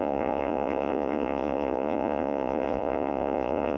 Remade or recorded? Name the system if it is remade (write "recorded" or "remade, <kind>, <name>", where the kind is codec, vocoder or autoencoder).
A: remade, vocoder, Vocos